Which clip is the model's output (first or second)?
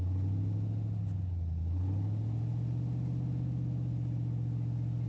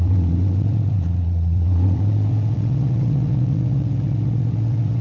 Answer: second